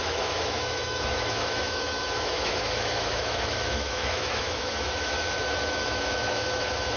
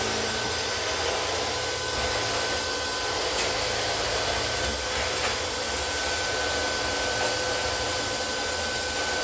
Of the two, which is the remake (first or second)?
first